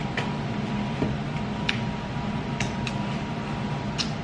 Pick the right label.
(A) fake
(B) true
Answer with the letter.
B